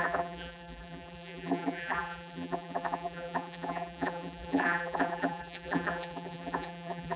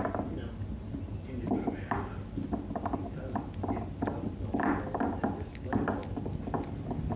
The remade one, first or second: first